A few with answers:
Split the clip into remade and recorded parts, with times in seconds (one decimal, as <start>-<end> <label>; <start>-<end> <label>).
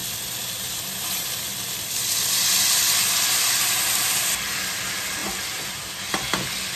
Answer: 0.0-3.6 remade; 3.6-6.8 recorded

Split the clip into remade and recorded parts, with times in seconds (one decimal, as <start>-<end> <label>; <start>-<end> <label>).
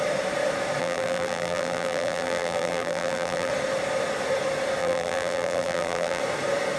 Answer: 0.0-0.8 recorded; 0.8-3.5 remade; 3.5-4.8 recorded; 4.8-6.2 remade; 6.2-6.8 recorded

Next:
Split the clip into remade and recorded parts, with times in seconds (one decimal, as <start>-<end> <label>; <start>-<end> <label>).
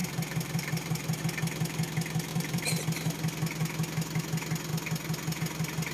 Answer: 0.0-1.2 remade; 1.2-2.3 recorded; 2.3-2.8 remade; 2.8-5.9 recorded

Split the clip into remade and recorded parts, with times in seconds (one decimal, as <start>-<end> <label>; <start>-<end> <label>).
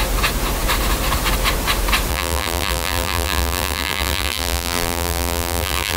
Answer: 0.0-2.1 recorded; 2.1-6.0 remade